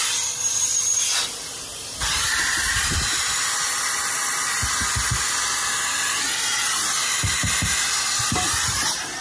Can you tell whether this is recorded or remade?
recorded